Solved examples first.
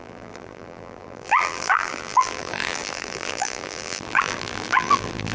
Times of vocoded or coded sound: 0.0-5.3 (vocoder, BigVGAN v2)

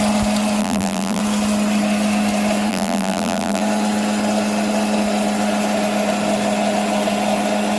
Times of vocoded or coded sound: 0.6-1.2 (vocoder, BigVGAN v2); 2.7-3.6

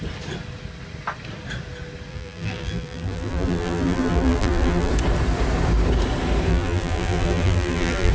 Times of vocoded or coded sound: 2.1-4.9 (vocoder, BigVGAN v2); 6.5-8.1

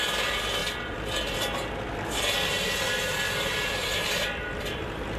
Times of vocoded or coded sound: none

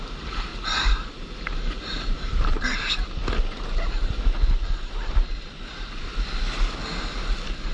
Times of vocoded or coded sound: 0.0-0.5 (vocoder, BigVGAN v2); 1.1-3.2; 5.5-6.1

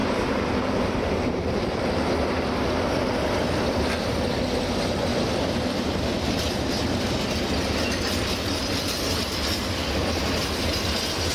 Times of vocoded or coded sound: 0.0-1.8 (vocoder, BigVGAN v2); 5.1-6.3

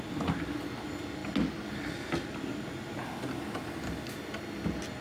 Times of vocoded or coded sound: none

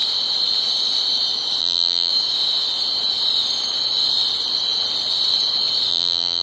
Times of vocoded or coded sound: 1.6-2.1 (vocoder, BigVGAN v2); 5.9-6.4